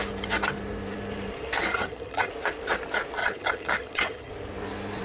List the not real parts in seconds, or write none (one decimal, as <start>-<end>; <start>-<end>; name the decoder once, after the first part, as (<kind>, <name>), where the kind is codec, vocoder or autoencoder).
1.7-2.3 (vocoder, HiFi-GAN); 3.2-4.3

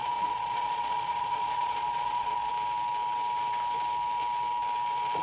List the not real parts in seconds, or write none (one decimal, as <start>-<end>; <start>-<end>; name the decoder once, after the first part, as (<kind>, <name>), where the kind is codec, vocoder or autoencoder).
0.0-2.5 (vocoder, Vocos)

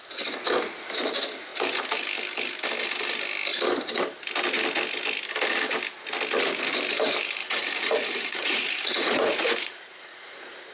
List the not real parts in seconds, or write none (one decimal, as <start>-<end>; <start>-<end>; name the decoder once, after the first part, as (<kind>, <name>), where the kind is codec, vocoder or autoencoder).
7.4-10.7 (vocoder, Vocos)

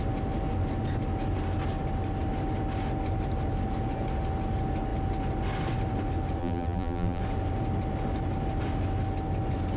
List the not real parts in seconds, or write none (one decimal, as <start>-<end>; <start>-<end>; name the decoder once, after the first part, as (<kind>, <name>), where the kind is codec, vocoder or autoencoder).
6.4-7.2 (vocoder, BigVGAN v2)

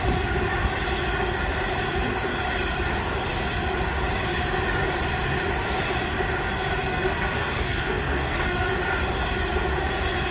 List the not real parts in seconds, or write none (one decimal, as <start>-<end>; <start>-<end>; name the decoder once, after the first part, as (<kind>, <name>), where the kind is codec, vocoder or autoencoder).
6.9-8.7 (codec, SNAC)

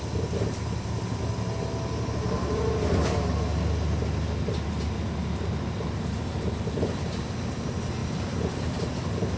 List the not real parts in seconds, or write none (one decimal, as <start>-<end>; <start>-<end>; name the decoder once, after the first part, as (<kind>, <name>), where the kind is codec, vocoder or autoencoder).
8.0-8.9 (vocoder, BigVGAN v2)

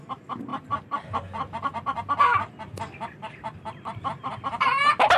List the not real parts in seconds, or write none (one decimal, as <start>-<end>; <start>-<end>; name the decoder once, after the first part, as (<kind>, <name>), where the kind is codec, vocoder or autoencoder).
0.5-2.5 (vocoder, BigVGAN v2)

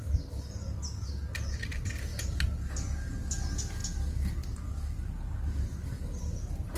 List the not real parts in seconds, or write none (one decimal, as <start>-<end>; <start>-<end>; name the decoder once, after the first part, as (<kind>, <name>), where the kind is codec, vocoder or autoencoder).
none